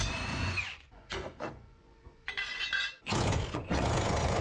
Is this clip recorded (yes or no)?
no